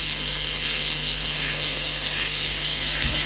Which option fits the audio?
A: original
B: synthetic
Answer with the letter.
B